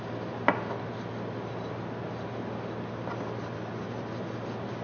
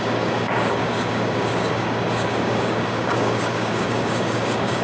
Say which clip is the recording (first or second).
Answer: first